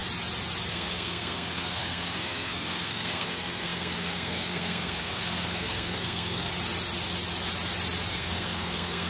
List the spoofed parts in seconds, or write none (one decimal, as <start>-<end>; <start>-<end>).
0.7-6.5; 8.1-9.1